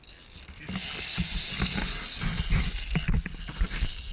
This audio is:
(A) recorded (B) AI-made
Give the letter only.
A